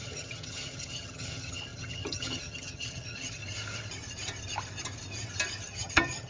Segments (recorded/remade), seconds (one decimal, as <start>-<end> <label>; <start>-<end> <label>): 0.0-3.4 remade; 3.4-5.6 recorded; 5.6-6.3 remade